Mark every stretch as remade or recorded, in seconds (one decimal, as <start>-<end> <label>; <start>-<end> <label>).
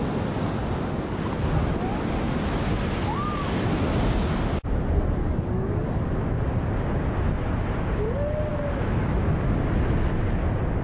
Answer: 0.0-5.2 recorded; 5.2-6.1 remade; 6.1-10.8 recorded